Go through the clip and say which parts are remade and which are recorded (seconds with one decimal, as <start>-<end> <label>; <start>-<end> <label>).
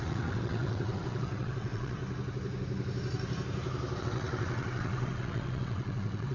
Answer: 0.0-2.0 remade; 2.0-4.0 recorded; 4.0-6.3 remade